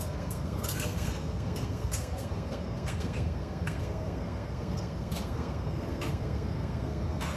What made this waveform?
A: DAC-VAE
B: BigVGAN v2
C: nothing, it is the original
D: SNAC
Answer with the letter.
D